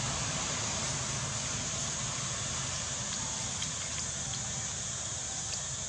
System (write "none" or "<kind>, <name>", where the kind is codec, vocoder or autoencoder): none